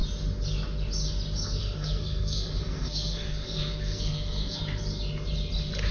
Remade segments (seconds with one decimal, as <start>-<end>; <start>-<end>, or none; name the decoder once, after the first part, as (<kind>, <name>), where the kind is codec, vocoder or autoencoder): 1.6-4.6 (codec, SNAC)